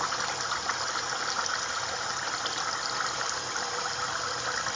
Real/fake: real